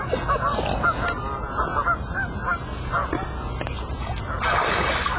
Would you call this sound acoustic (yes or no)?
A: yes